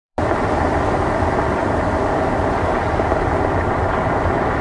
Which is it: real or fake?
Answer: fake